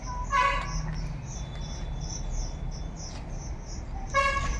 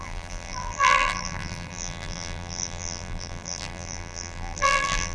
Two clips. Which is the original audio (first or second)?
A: first